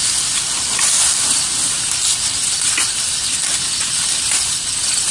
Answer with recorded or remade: recorded